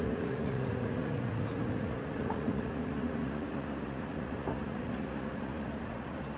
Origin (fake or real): fake